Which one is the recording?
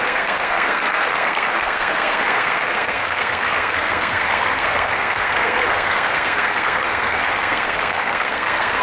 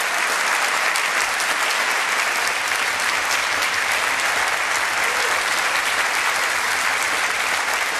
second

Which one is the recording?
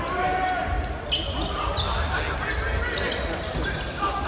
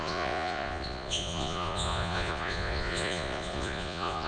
first